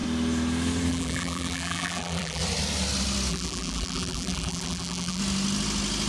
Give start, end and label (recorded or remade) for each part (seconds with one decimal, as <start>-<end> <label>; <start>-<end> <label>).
0.0-0.9 recorded; 0.9-2.4 remade; 2.4-3.3 recorded; 3.3-5.2 remade; 5.2-6.1 recorded